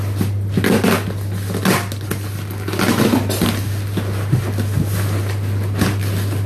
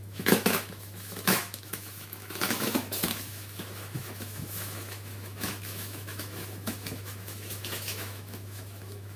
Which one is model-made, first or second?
second